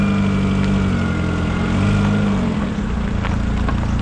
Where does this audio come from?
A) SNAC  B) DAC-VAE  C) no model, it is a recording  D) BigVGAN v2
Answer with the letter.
C